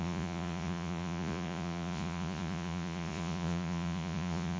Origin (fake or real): fake